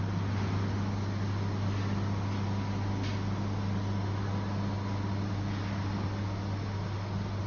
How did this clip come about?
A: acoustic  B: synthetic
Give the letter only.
A